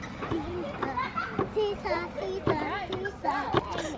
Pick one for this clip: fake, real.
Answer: real